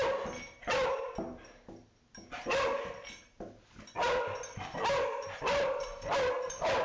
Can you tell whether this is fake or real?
real